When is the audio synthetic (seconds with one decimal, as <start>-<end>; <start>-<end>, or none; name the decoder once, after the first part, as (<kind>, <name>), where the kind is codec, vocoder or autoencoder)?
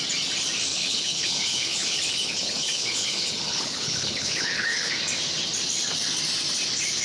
0.7-4.9 (codec, HILCodec)